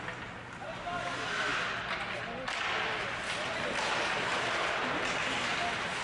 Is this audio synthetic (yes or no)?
no